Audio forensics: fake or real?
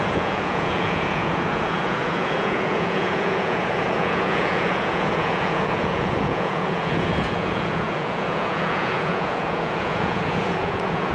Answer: fake